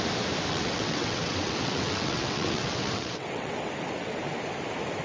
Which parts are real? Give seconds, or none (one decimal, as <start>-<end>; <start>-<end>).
0.0-0.5; 3.5-5.0

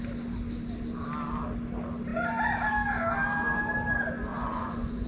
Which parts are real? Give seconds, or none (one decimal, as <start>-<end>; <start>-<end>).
0.0-4.3